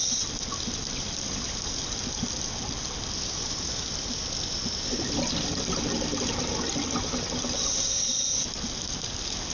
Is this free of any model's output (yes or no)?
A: yes